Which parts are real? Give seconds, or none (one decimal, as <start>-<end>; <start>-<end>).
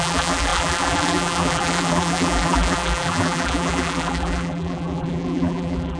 none